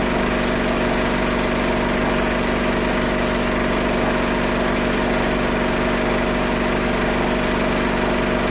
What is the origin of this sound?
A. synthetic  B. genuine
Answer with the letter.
B